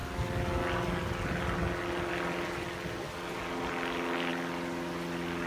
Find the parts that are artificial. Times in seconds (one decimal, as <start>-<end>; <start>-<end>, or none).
none